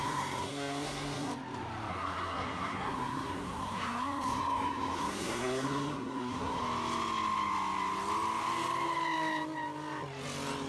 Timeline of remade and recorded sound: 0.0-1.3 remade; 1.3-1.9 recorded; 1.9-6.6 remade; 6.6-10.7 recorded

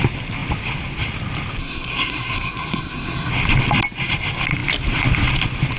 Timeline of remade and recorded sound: 0.0-1.6 recorded; 1.6-3.3 remade; 3.3-5.8 recorded

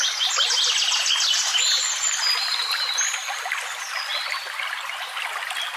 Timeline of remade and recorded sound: 0.0-5.8 recorded

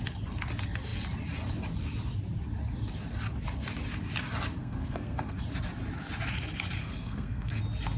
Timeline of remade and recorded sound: 0.0-4.6 recorded; 4.6-5.4 remade; 5.4-6.8 recorded; 6.8-7.6 remade; 7.6-8.0 recorded

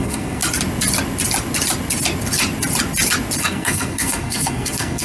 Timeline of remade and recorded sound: 0.0-0.4 remade; 0.4-3.4 recorded; 3.4-5.0 remade

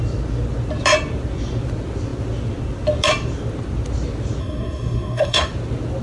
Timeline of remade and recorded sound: 0.0-4.4 recorded; 4.4-5.5 remade; 5.5-6.0 recorded